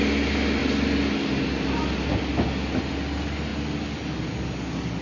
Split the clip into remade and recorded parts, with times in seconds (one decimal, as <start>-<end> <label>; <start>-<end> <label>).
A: 0.0-5.0 recorded